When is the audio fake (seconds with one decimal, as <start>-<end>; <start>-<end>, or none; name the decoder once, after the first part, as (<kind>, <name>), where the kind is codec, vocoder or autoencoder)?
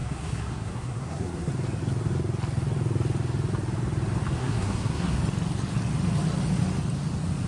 0.0-1.5 (codec, SNAC); 4.4-5.2